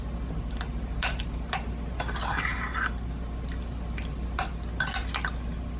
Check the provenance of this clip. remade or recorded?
recorded